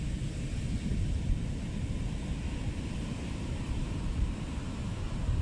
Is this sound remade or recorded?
recorded